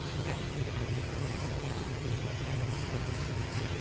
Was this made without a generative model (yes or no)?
no